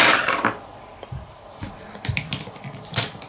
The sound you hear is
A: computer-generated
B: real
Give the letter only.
B